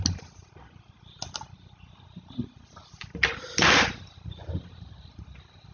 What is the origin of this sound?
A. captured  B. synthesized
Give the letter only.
A